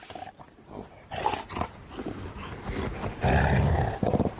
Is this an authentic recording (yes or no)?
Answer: yes